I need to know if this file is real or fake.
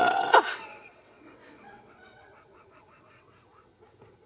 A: fake